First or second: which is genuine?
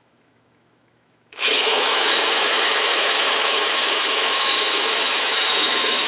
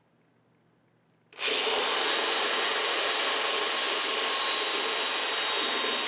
second